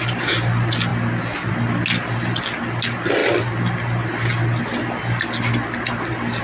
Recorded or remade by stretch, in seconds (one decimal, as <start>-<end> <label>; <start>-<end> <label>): 0.0-6.4 recorded